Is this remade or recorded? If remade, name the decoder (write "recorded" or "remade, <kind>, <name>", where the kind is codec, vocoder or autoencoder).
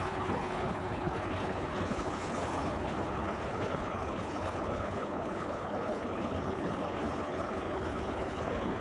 remade, codec, HILCodec